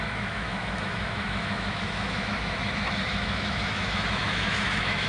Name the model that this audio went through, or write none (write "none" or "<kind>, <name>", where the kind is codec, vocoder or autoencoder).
autoencoder, DAC-VAE